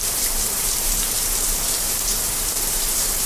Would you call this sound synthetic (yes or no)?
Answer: yes